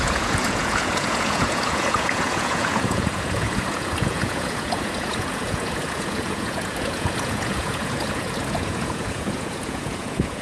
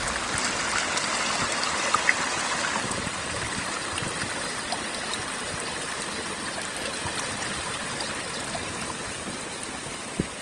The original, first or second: second